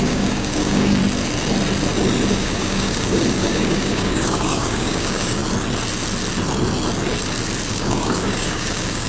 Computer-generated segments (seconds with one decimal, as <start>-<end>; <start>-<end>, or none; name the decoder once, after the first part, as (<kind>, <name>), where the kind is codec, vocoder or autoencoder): 0.0-1.0 (codec, DAC); 2.3-5.4; 7.7-9.1